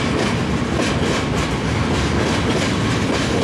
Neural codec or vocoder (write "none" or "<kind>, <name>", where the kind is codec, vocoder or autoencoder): none